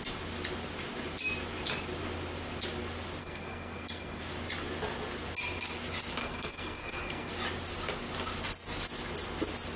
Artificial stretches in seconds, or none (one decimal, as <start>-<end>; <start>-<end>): 3.2-4.2; 6.2-7.3